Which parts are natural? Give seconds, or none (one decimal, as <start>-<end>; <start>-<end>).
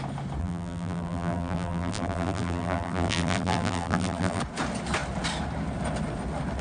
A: 0.0-0.4; 4.4-6.6